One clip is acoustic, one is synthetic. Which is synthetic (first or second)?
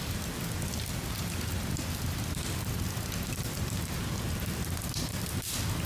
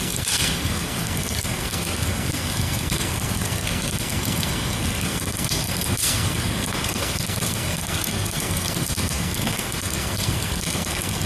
second